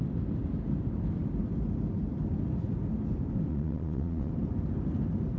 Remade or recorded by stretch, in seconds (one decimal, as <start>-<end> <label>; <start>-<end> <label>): 0.0-3.5 recorded; 3.5-4.3 remade; 4.3-5.4 recorded